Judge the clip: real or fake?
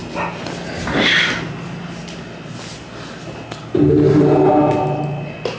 real